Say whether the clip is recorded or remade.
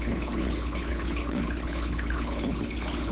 remade